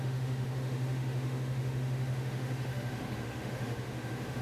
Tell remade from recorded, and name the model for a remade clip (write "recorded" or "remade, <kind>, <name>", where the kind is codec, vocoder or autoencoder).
remade, autoencoder, DAC-VAE